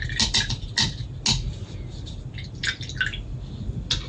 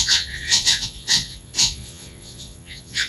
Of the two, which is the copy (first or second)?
second